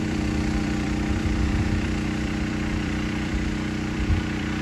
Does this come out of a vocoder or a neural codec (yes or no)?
yes